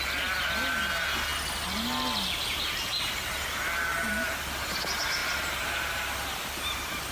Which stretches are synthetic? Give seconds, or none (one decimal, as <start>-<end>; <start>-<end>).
5.2-7.1